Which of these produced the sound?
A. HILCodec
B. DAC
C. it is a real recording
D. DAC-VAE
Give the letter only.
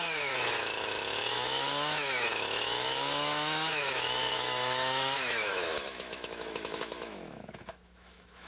D